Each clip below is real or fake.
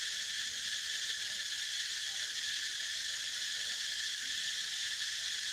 real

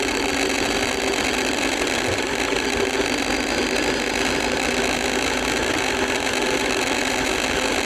real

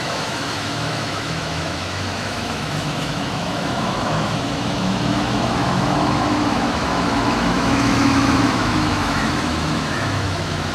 fake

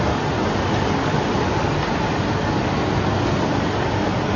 real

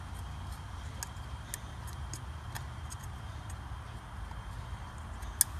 real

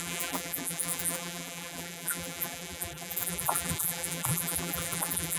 fake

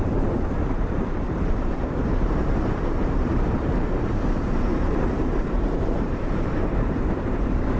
fake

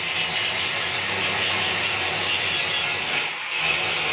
real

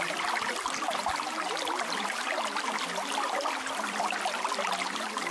fake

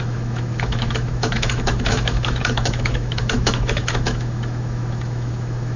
fake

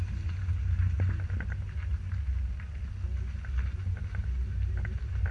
real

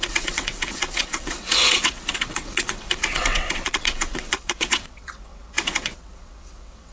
fake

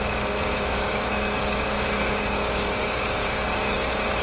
fake